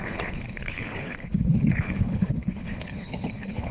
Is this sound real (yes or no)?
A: no